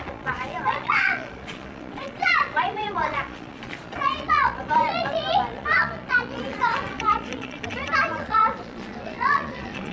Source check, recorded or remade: remade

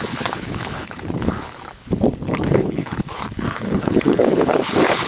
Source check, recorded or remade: remade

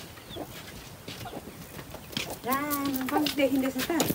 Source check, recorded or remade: recorded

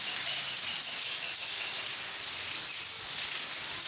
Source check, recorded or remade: recorded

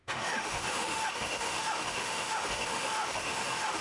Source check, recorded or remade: remade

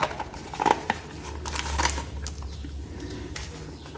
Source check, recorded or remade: recorded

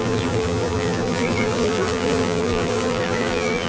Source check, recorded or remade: remade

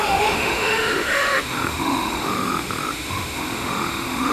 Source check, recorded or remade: remade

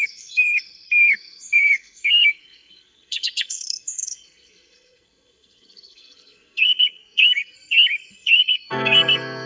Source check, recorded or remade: remade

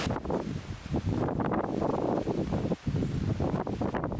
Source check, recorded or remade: recorded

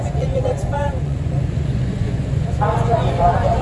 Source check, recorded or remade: remade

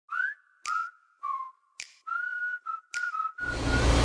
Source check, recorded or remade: recorded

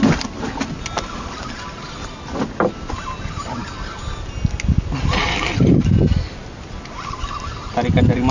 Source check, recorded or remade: recorded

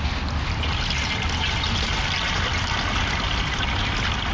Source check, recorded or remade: recorded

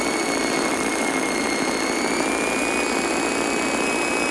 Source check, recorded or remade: recorded